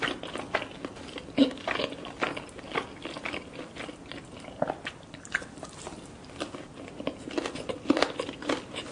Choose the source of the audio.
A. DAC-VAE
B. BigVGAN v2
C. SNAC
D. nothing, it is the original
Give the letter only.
D